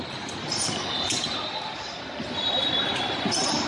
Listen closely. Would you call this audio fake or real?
real